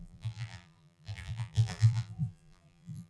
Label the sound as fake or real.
fake